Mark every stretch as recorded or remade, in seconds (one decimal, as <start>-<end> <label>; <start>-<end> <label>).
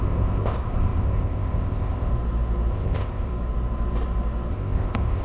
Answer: 0.0-2.1 remade; 2.1-2.7 recorded; 2.7-3.3 remade; 3.3-4.5 recorded; 4.5-5.2 remade